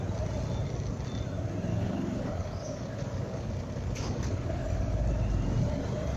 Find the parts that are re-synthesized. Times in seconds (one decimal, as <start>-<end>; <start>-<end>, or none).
1.7-5.0